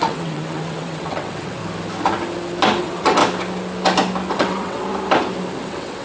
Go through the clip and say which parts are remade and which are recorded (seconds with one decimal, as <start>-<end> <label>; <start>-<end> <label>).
0.0-1.6 remade; 1.6-2.8 recorded; 2.8-3.2 remade; 3.2-4.3 recorded; 4.3-4.9 remade; 4.9-5.6 recorded; 5.6-6.0 remade